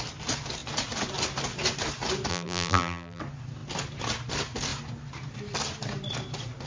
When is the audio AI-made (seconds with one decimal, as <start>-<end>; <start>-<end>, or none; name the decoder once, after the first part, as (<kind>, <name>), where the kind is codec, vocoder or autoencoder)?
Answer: 2.3-3.2 (vocoder, BigVGAN v2)